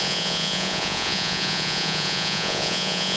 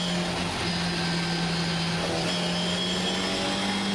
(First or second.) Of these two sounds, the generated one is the first